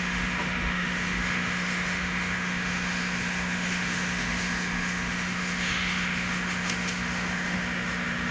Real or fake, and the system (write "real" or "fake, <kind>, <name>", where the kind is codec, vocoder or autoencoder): fake, autoencoder, DAC-VAE